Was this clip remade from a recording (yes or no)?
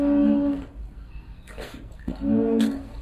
yes